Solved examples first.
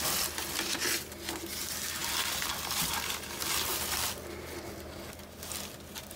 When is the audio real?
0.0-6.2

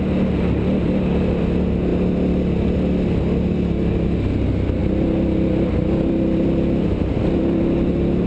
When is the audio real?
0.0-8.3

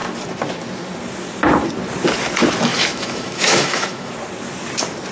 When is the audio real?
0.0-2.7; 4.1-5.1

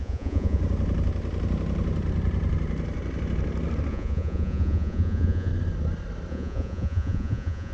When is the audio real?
0.6-3.9; 5.5-6.3

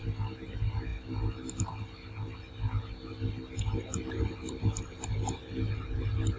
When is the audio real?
0.0-6.4